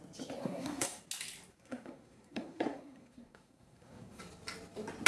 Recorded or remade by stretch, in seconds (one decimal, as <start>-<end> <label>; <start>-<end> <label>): 0.0-0.4 recorded; 0.4-1.0 remade; 1.0-1.5 recorded; 1.5-4.2 remade; 4.2-5.1 recorded